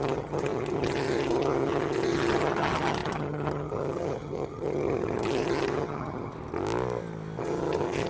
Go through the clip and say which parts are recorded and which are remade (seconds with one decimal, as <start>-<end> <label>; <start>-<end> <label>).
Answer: 0.0-6.3 remade; 6.3-7.4 recorded; 7.4-8.1 remade